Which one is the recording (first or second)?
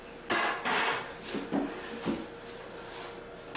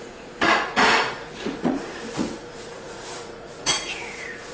first